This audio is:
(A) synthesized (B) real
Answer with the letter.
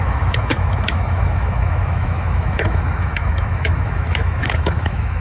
A